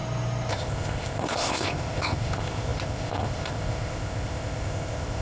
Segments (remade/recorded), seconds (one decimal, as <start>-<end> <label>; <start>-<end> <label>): 0.0-0.5 recorded; 0.5-5.2 remade

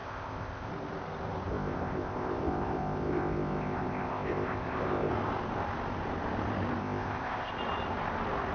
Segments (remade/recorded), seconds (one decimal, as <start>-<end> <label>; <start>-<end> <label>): 0.0-0.7 remade; 0.7-1.5 recorded; 1.5-5.1 remade; 5.1-6.8 recorded; 6.8-7.5 remade; 7.5-8.5 recorded

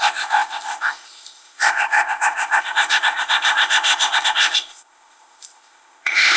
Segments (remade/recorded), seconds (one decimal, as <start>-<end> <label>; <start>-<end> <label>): 0.0-6.4 remade

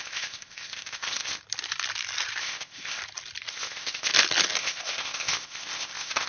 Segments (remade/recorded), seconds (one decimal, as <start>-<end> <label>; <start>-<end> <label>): 0.0-1.4 remade; 1.4-2.4 recorded; 2.4-3.0 remade; 3.0-3.5 recorded; 3.5-4.1 remade; 4.1-4.6 recorded; 4.6-6.3 remade

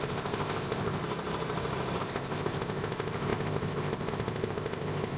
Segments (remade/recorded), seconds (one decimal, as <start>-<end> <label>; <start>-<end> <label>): 0.0-1.0 remade; 1.0-2.0 recorded; 2.0-5.2 remade